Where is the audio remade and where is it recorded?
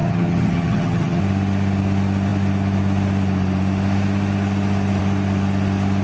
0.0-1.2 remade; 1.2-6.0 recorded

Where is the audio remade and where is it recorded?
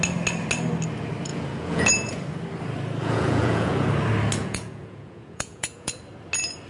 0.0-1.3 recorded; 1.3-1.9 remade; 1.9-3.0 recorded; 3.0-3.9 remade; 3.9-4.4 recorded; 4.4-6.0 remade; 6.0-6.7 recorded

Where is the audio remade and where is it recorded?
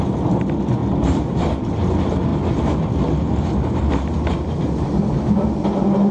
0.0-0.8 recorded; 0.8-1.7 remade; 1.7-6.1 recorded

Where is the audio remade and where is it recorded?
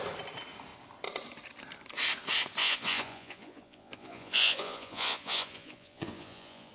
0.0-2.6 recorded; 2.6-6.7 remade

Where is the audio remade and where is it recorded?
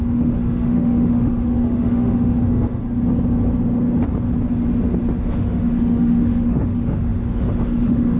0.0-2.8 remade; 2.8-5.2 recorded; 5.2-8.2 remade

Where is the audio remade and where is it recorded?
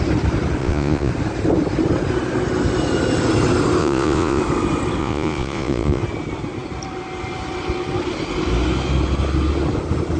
0.0-0.6 recorded; 0.6-1.1 remade; 1.1-3.8 recorded; 3.8-4.4 remade; 4.4-5.0 recorded; 5.0-6.0 remade; 6.0-10.2 recorded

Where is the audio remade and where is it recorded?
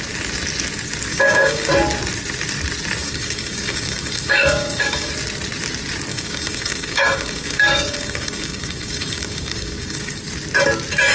0.0-1.1 recorded; 1.1-1.7 remade; 1.7-3.0 recorded; 3.0-5.1 remade; 5.1-6.1 recorded; 6.1-10.2 remade; 10.2-11.1 recorded